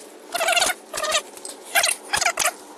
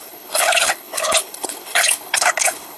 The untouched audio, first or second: first